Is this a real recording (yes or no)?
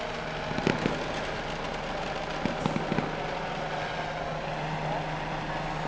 yes